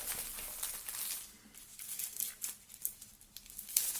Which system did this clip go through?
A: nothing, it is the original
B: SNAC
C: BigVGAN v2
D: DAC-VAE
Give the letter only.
A